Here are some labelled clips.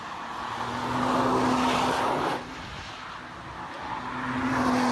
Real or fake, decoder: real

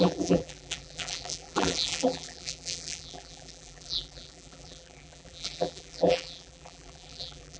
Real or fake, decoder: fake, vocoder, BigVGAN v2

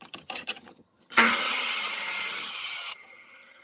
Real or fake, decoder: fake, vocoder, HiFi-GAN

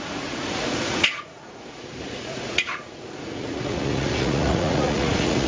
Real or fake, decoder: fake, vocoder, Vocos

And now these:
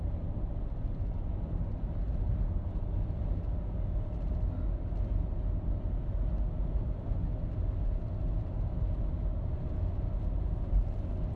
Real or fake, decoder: real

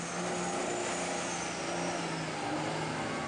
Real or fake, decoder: real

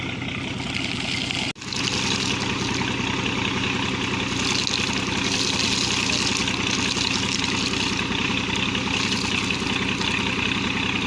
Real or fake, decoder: real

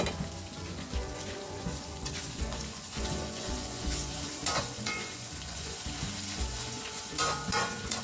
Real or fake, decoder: fake, vocoder, Vocos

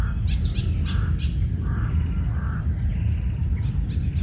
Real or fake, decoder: real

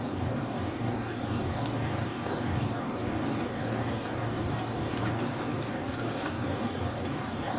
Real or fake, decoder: fake, codec, DAC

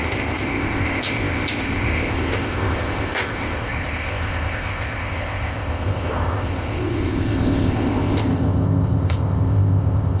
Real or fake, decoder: fake, codec, ZipCodec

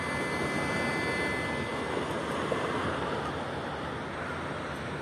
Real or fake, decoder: real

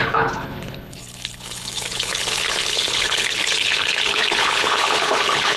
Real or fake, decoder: fake, codec, HILCodec